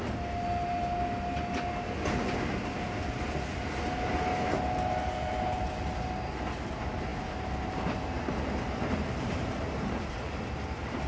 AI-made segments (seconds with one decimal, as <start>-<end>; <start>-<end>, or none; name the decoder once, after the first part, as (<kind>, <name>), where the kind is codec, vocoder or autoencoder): none